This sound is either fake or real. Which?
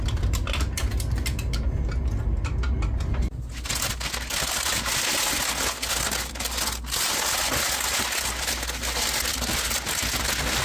real